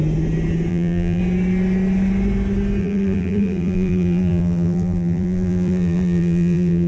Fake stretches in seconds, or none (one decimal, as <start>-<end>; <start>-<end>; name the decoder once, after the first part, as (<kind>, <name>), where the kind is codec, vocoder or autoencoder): 0.7-1.2 (vocoder, BigVGAN v2); 2.8-6.9